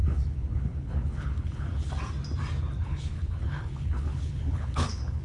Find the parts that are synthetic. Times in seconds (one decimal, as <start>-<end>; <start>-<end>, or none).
0.0-1.9; 2.8-5.2